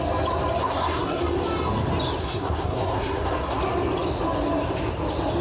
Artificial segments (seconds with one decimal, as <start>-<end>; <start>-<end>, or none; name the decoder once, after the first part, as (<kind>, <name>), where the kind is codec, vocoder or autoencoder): 0.6-1.2 (codec, SNAC); 2.2-3.6